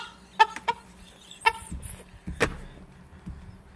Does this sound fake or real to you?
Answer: real